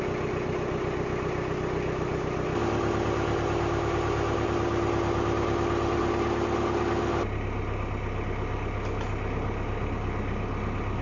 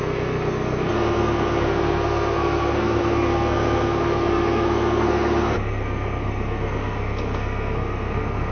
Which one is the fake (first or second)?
second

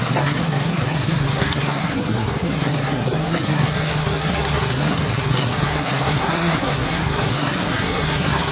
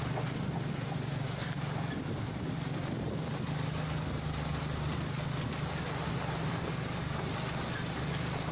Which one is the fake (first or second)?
first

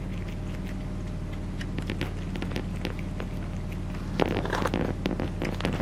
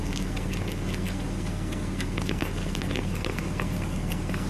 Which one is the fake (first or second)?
second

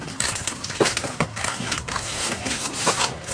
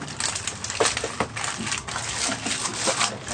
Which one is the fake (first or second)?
first